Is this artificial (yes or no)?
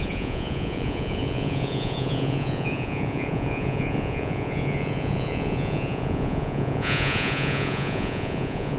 yes